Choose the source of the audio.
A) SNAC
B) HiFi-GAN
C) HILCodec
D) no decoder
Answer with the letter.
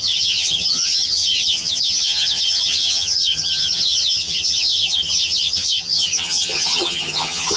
B